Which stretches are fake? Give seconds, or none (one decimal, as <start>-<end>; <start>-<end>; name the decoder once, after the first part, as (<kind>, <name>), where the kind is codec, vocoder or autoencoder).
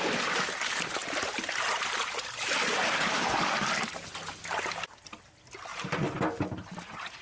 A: none